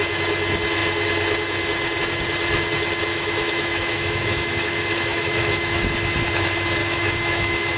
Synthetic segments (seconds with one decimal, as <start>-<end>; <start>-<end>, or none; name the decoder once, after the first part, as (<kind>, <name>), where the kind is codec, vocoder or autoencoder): 3.1-5.8 (autoencoder, DAC-VAE); 6.8-7.8